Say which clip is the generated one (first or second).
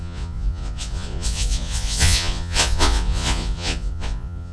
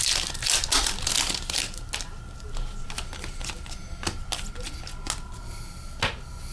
first